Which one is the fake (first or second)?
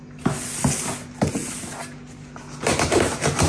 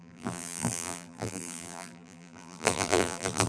second